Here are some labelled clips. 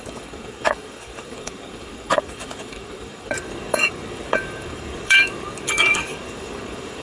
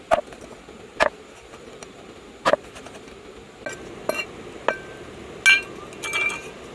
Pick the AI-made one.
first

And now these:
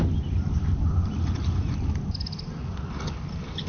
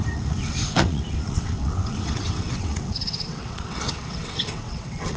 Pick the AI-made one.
second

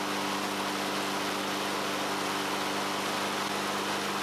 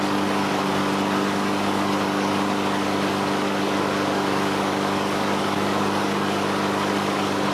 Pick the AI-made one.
second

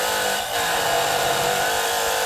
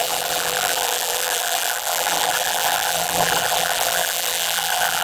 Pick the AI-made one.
second